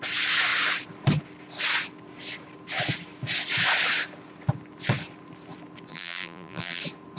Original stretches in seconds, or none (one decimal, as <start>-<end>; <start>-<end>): 0.0-5.9; 6.8-7.2